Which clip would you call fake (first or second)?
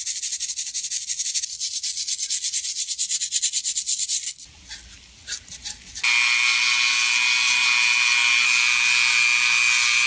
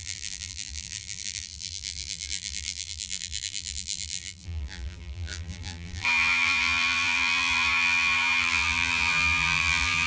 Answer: second